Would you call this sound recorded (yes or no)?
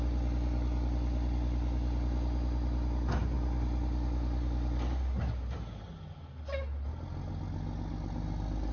yes